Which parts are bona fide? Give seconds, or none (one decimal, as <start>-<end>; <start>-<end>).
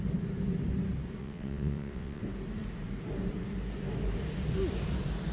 0.0-1.2; 2.2-5.3